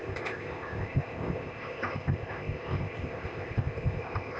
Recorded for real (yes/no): no